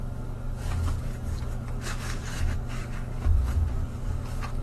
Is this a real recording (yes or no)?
no